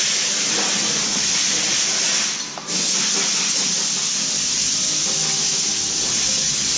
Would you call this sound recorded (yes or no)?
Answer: yes